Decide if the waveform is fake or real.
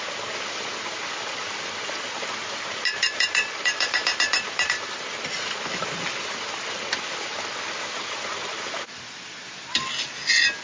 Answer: real